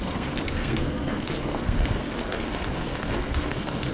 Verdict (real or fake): fake